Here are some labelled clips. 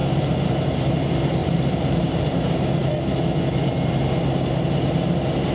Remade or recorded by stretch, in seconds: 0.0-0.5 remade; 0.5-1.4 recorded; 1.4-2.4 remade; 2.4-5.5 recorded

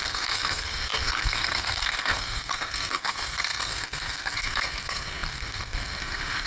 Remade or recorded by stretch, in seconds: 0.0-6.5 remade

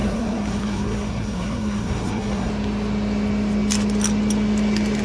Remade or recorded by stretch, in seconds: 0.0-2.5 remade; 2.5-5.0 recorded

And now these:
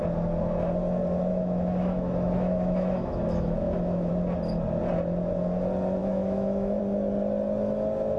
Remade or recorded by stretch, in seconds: 0.0-1.3 recorded; 1.3-4.1 remade; 4.1-6.0 recorded; 6.0-6.8 remade; 6.8-8.2 recorded

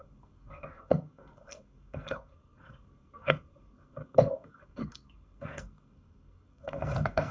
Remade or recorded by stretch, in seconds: 0.0-7.3 remade

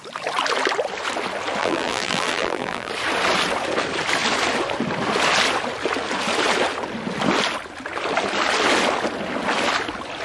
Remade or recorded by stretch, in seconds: 0.0-1.6 recorded; 1.6-2.9 remade; 2.9-10.2 recorded

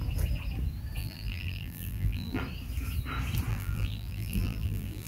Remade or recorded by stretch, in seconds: 0.0-1.0 recorded; 1.0-2.4 remade; 2.4-3.5 recorded; 3.5-5.1 remade

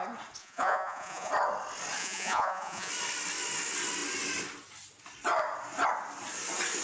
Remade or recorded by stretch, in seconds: 0.0-0.4 recorded; 0.4-1.3 remade; 1.3-2.0 recorded; 2.0-2.9 remade; 2.9-6.8 recorded